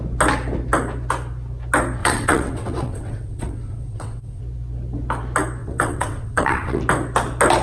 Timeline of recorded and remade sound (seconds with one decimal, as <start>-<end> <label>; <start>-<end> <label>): 0.0-2.0 recorded; 2.0-4.4 remade; 4.4-5.6 recorded; 5.6-6.8 remade; 6.8-7.6 recorded